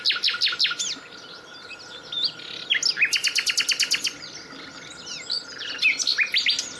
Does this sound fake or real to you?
real